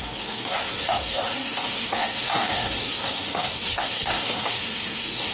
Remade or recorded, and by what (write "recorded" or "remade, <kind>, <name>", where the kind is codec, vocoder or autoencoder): remade, codec, SNAC